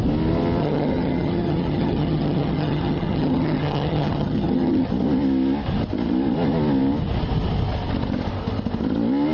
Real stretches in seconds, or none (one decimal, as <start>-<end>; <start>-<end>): 0.0-0.6; 4.9-9.3